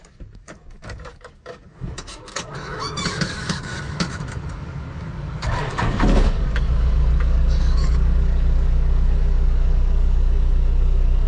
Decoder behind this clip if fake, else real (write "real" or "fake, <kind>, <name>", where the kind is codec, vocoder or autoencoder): fake, codec, DAC